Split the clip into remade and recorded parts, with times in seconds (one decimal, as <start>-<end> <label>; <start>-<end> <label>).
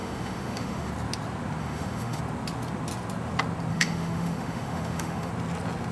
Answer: 0.0-0.9 remade; 0.9-1.6 recorded; 1.6-2.2 remade; 2.2-3.7 recorded; 3.7-5.3 remade; 5.3-5.9 recorded